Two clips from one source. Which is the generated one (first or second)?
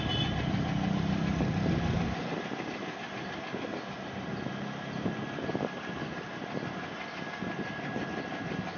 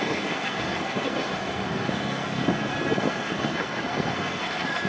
second